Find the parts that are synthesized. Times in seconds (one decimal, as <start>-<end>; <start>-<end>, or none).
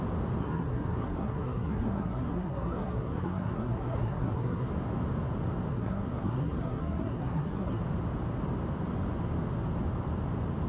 0.4-4.7; 5.7-7.8